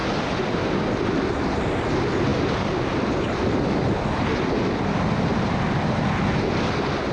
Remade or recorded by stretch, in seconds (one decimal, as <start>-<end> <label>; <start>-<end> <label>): 0.0-7.1 recorded

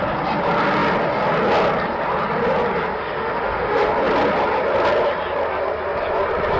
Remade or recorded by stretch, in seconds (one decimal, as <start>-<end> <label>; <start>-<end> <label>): 0.0-3.0 recorded; 3.0-3.9 remade; 3.9-6.6 recorded

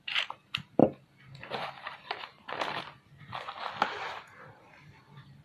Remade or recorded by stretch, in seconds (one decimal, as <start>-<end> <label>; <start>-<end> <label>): 0.0-0.8 remade; 0.8-4.0 recorded; 4.0-5.4 remade

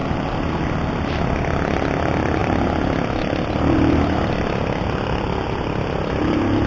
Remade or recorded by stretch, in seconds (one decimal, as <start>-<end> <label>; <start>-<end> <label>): 0.0-2.4 recorded; 2.4-6.7 remade

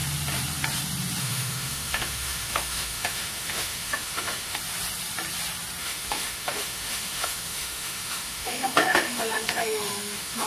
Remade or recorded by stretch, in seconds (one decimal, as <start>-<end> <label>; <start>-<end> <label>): 0.0-1.2 recorded; 1.2-4.6 remade; 4.6-5.8 recorded; 5.8-10.5 remade

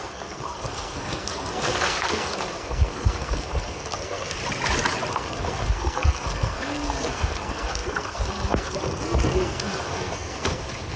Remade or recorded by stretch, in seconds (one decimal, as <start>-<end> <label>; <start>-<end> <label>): 0.0-4.4 remade; 4.4-5.1 recorded; 5.1-11.0 remade

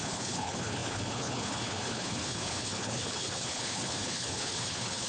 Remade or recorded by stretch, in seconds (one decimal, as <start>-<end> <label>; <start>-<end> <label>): 0.0-5.1 remade